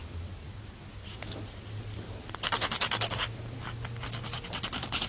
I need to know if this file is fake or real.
real